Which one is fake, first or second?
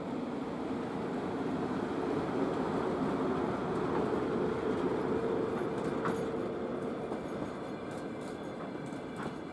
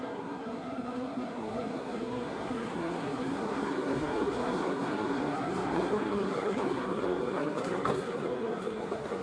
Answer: second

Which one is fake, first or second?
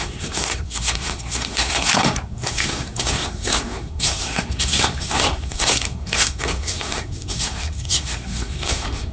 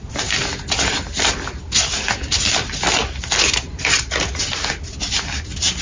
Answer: first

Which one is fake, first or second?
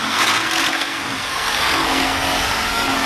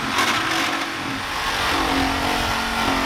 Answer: first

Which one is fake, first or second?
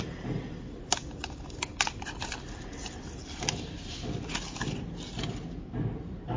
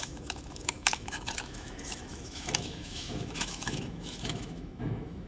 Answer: second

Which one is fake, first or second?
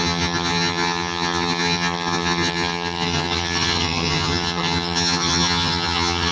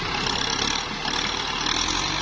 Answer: first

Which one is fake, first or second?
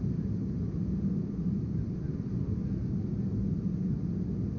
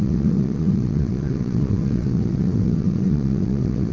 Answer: second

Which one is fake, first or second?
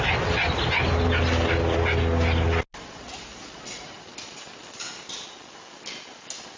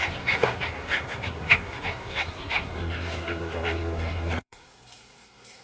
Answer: second